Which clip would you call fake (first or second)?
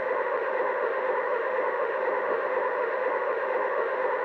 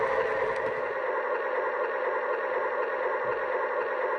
first